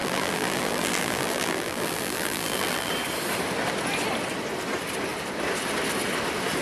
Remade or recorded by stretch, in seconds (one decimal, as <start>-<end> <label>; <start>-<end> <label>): 0.0-2.9 remade; 2.9-6.6 recorded